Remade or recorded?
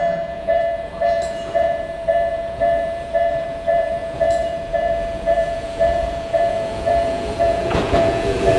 remade